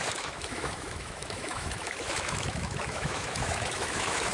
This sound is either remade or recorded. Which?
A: remade